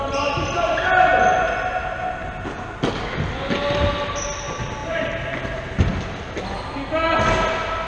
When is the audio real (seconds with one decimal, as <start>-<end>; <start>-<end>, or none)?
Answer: 0.0-7.9